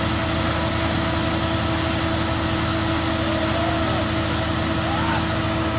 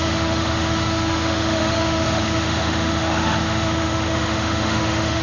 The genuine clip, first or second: first